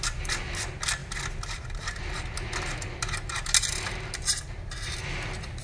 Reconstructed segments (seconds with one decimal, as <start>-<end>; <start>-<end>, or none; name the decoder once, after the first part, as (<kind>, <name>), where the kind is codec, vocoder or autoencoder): none